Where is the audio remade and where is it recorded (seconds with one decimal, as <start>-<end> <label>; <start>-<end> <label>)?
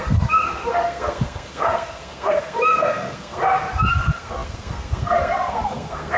0.0-3.4 remade; 3.4-3.9 recorded; 3.9-6.2 remade